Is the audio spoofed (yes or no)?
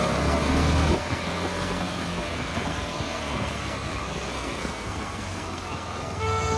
yes